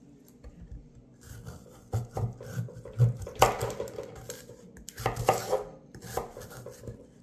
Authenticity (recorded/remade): recorded